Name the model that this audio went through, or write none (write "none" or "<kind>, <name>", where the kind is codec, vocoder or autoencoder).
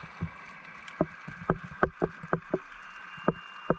none